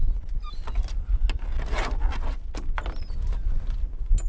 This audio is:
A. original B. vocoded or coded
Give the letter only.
A